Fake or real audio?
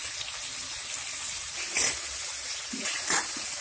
real